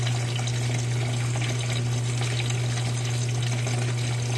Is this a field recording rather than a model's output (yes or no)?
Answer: yes